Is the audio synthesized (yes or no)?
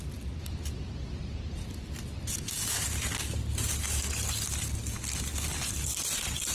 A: no